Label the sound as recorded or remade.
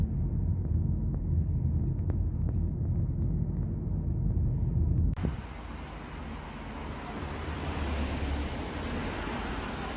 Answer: recorded